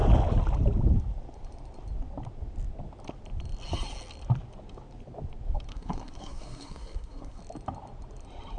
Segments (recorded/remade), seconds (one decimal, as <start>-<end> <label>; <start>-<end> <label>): 0.0-5.7 recorded; 5.7-7.4 remade; 7.4-8.6 recorded